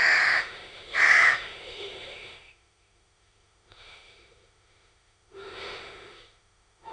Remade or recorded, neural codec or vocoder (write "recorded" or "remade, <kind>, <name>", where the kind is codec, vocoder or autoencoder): remade, autoencoder, DAC-VAE